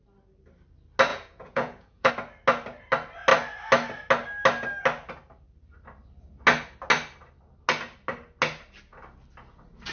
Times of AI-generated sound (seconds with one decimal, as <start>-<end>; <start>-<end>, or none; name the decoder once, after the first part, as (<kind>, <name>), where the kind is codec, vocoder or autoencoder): 1.1-2.1 (vocoder, Vocos)